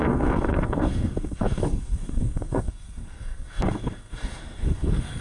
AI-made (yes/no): yes